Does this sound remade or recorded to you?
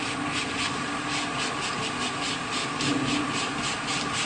recorded